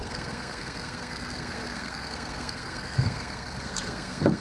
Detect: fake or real fake